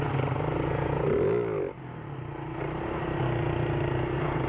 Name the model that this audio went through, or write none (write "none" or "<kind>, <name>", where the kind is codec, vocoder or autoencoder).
none